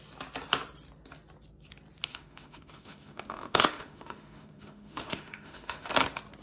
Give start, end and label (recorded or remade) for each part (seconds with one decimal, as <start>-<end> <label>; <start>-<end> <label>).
0.0-2.1 recorded; 2.1-5.9 remade; 5.9-6.4 recorded